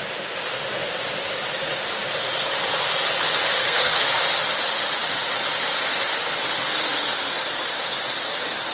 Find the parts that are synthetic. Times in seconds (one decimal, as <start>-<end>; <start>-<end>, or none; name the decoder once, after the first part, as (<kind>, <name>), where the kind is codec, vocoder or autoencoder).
3.6-4.2 (codec, SNAC)